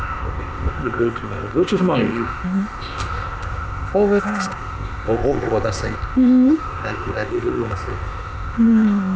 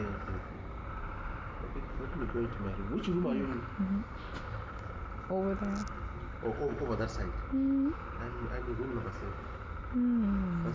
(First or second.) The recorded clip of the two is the second